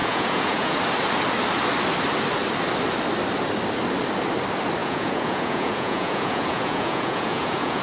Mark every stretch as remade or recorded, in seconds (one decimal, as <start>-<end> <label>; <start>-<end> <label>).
0.0-0.7 remade; 0.7-4.8 recorded; 4.8-7.8 remade